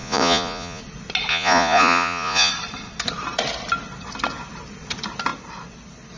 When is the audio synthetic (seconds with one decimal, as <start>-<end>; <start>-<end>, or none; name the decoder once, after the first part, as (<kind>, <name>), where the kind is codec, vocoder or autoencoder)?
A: 0.0-0.8 (vocoder, Vocos); 1.3-2.5